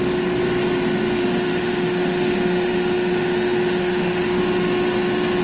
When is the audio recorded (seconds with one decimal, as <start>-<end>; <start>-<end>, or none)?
0.0-1.2; 4.4-5.4